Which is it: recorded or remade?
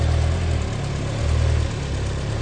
recorded